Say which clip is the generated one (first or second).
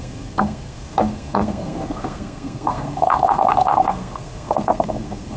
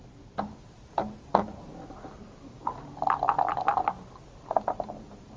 first